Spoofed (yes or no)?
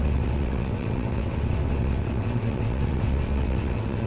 yes